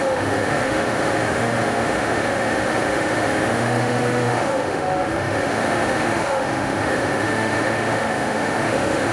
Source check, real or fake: fake